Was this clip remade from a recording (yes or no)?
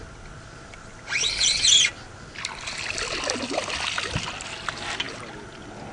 no